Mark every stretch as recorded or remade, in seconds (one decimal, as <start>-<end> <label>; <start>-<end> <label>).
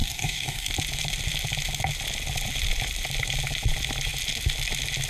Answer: 0.0-0.7 remade; 0.7-5.1 recorded